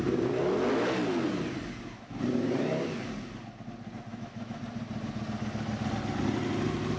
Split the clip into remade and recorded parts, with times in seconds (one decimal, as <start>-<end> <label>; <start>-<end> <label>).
0.0-4.1 recorded; 4.1-4.6 remade; 4.6-7.0 recorded